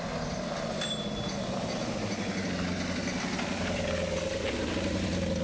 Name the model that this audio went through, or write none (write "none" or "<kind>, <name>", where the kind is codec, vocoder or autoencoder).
none